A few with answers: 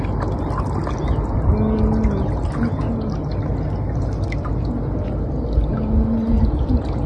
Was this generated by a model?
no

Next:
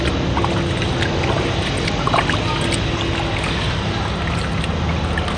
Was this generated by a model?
no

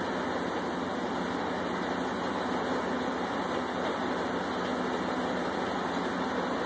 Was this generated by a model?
no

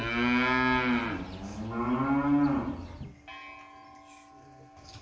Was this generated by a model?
no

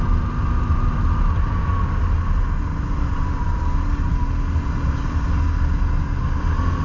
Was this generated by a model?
no